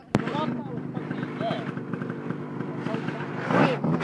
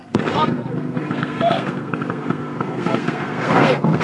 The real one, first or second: first